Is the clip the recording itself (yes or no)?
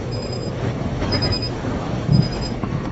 no